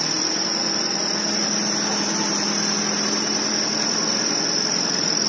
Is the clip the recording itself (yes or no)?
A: yes